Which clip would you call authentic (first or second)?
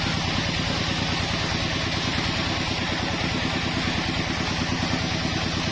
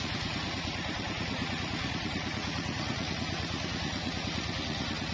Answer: first